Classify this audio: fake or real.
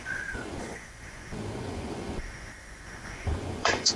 fake